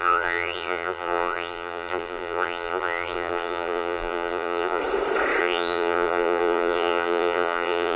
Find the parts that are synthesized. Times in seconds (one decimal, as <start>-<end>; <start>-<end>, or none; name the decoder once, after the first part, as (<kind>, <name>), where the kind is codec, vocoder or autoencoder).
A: 0.0-4.8 (vocoder, BigVGAN v2); 5.4-8.0